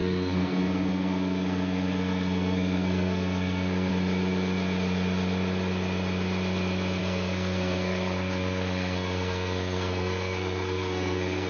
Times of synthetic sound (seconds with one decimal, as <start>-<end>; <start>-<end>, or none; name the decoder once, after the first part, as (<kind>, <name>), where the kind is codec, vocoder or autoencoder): 0.0-3.9 (codec, SNAC); 7.0-11.5